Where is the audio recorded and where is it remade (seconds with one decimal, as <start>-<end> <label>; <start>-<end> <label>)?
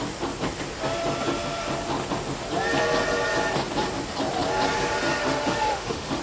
0.0-5.2 recorded; 5.2-6.2 remade